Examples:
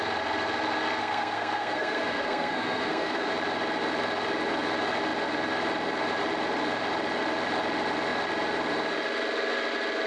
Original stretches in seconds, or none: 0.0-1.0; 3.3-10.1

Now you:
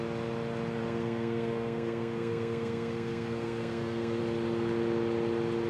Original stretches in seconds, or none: 0.0-0.8; 4.2-5.7

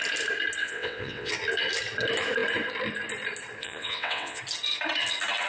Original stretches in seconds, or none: 0.0-0.6; 1.3-3.6; 4.4-5.5

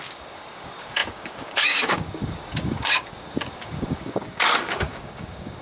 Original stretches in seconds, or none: none

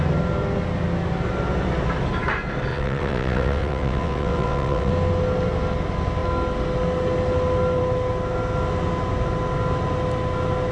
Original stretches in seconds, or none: 0.0-2.7; 4.9-10.7

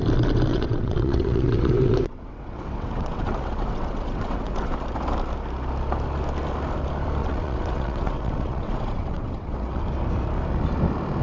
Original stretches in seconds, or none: 0.0-0.5; 4.7-7.2; 9.8-11.2

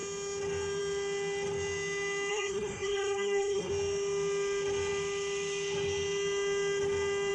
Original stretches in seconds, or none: 0.0-2.3; 3.7-7.3

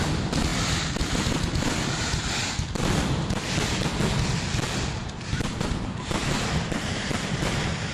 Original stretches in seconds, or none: 0.0-5.0